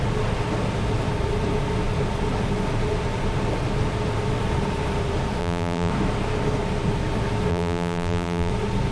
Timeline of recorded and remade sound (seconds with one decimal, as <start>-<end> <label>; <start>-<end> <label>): 0.0-5.4 recorded; 5.4-5.9 remade; 5.9-7.5 recorded; 7.5-8.5 remade; 8.5-8.9 recorded